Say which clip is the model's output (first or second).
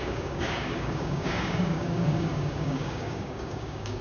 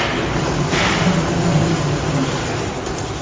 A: first